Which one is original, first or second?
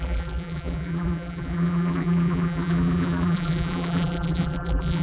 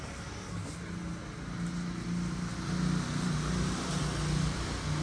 second